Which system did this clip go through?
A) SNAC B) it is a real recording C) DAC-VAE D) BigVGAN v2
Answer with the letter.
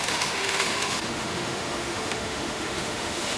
C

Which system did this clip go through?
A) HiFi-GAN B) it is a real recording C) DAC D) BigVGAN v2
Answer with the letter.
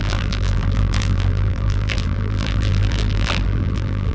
D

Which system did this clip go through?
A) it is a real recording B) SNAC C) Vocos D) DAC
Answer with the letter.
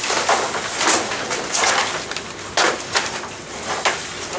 A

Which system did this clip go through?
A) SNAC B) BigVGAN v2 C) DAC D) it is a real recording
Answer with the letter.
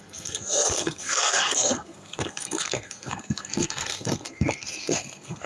A